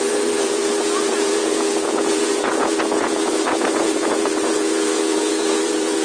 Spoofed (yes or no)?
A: yes